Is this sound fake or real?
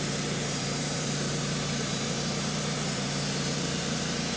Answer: fake